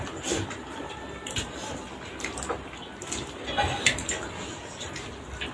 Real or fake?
real